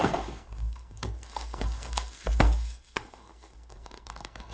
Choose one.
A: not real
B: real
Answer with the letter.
A